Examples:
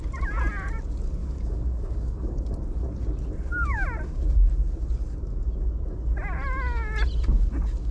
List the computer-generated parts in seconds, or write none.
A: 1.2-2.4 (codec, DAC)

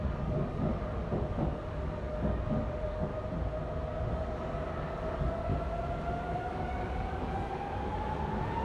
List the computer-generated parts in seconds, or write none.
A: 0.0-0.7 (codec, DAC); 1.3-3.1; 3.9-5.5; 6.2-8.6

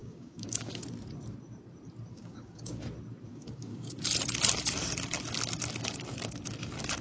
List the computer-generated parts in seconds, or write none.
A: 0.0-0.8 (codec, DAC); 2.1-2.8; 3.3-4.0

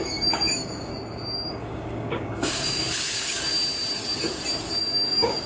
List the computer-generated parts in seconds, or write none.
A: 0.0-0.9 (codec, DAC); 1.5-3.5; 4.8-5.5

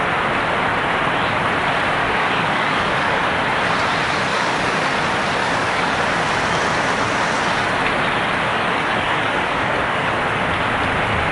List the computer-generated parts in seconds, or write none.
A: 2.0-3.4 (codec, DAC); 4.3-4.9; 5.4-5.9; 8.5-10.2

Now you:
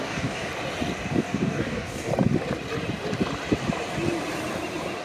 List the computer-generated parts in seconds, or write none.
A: 0.0-0.5 (codec, DAC); 1.1-2.1